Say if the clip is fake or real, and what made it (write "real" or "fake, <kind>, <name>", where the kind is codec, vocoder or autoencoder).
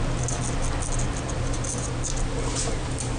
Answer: real